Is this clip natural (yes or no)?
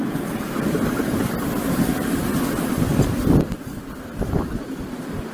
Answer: yes